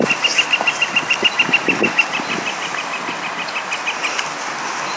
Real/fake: real